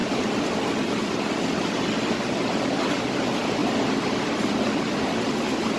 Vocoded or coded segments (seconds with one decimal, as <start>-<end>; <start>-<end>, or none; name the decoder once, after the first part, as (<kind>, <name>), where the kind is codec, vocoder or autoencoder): none